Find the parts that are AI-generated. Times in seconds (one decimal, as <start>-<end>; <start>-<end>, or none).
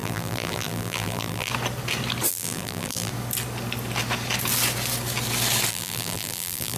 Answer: 0.0-1.5; 2.3-3.1; 5.7-6.8